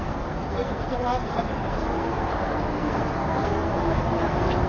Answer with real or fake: fake